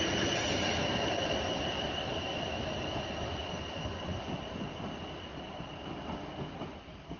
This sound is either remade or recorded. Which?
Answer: recorded